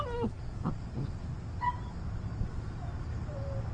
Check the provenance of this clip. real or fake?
real